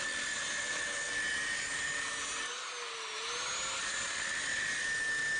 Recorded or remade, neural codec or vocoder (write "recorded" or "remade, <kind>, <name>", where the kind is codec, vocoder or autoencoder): recorded